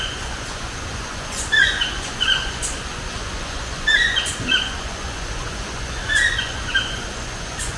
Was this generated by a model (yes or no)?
yes